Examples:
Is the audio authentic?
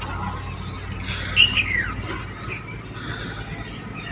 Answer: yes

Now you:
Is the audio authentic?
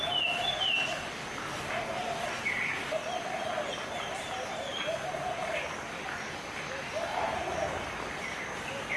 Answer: yes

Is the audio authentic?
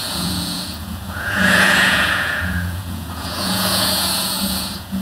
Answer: no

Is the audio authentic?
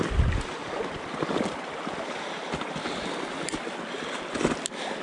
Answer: yes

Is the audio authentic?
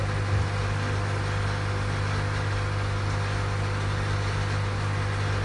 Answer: yes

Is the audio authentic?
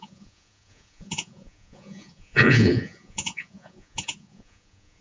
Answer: no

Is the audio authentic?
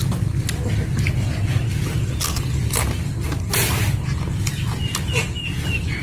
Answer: yes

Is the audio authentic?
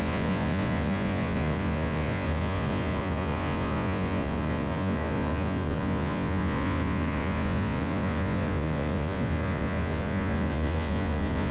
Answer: no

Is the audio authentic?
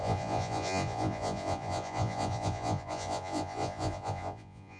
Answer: no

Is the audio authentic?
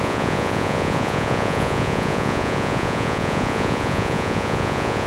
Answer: no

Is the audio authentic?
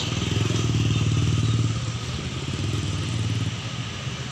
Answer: yes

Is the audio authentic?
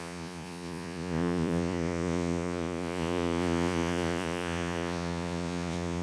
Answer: no